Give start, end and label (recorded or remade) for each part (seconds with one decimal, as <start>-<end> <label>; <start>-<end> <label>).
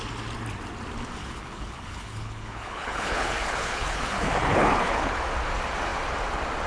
0.0-1.2 recorded; 1.2-5.2 remade; 5.2-6.7 recorded